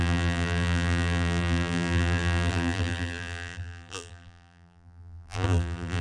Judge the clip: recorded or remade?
remade